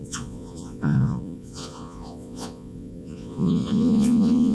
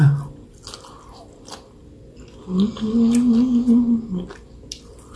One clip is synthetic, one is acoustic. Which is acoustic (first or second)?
second